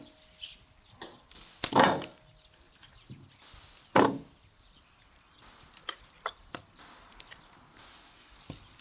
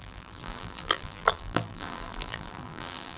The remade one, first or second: second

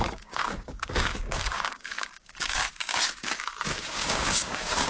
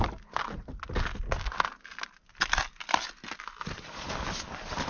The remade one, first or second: first